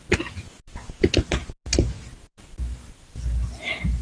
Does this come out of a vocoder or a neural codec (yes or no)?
no